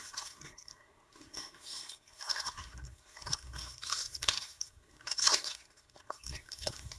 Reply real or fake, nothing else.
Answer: fake